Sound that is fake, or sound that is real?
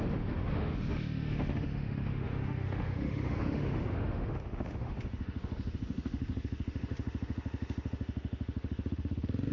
fake